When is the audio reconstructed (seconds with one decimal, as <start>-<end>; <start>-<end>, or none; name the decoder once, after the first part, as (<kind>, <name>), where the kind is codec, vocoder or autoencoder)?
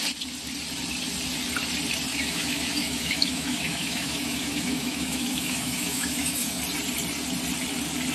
2.1-6.6 (autoencoder, DAC-VAE)